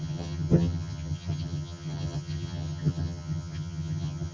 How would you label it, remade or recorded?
remade